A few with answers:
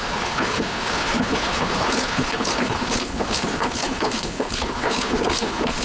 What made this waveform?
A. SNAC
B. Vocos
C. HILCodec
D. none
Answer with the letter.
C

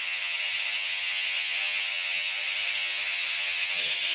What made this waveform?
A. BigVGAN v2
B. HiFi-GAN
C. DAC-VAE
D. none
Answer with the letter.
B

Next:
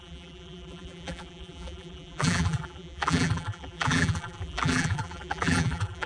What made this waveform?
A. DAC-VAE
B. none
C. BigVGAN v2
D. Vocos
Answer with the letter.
C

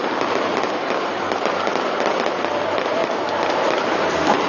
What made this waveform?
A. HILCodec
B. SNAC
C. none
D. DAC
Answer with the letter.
C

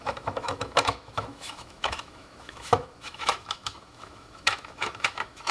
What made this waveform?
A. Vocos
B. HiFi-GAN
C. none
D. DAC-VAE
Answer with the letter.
D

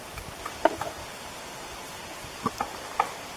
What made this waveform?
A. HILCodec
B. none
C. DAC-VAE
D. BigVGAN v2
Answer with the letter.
D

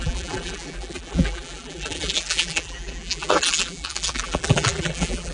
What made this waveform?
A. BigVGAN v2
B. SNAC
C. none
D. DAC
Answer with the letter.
A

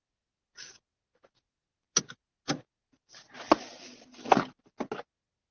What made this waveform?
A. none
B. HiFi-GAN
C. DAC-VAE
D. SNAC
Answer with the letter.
A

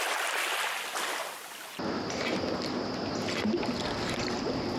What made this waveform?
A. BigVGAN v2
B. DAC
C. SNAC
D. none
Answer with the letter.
D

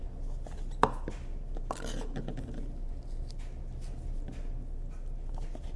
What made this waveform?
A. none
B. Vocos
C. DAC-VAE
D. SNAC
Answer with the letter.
A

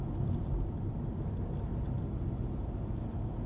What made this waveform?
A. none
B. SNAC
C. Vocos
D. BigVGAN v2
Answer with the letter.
A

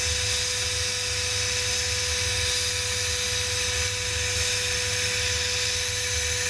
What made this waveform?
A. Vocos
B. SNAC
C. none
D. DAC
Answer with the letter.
C